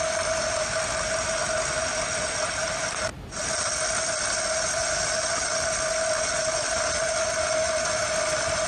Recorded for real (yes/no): yes